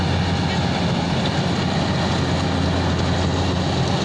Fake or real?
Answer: real